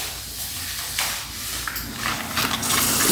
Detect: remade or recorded recorded